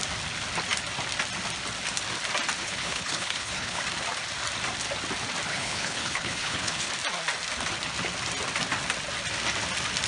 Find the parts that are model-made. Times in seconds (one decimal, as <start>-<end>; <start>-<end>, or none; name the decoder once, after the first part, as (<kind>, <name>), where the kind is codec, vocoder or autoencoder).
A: 2.6-3.8 (codec, HILCodec); 5.5-6.9